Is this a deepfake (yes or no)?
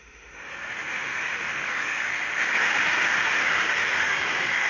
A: yes